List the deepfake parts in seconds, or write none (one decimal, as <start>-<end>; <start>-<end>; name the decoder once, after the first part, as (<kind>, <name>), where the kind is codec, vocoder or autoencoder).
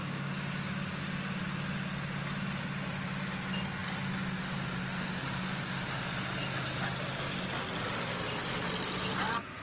0.0-1.0 (codec, DAC)